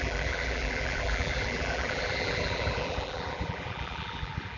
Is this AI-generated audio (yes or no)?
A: yes